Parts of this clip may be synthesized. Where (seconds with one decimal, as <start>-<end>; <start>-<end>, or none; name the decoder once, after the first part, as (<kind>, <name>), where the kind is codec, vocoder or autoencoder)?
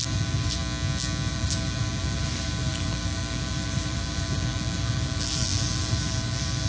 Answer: 0.0-0.6 (vocoder, BigVGAN v2); 1.3-6.7